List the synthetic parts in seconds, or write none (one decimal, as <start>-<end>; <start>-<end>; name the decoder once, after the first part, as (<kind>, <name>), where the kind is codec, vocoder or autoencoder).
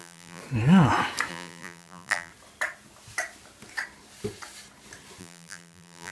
0.0-0.4 (vocoder, BigVGAN v2); 1.3-2.3; 5.2-6.1